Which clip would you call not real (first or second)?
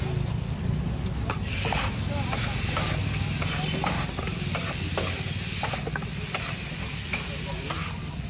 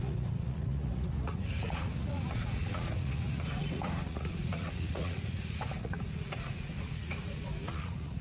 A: second